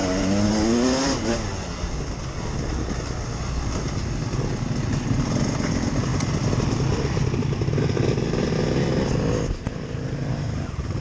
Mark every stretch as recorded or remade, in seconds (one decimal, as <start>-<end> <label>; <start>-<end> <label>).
0.0-11.0 recorded